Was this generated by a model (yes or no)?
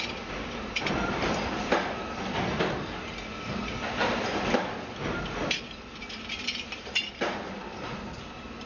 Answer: no